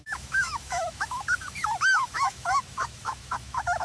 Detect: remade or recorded remade